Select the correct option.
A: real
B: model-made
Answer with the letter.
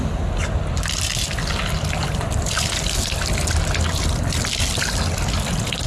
A